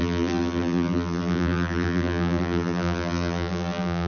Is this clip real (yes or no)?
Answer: no